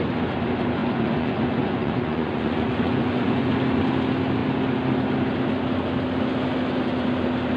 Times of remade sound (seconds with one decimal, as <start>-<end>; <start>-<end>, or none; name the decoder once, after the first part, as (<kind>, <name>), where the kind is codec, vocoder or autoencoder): 0.8-3.5 (vocoder, Vocos)